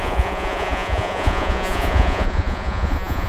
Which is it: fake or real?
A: fake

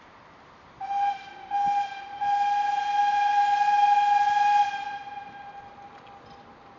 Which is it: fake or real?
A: real